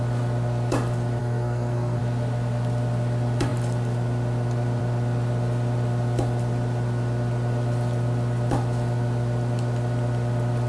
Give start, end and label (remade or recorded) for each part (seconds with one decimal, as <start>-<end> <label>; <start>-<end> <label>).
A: 0.0-1.2 recorded; 1.2-2.0 remade; 2.0-10.7 recorded